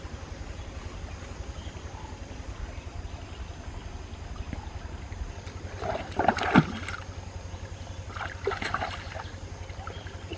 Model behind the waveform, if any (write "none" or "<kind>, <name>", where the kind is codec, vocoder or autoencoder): none